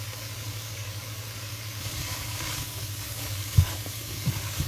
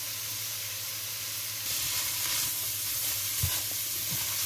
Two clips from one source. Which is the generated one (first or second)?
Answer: first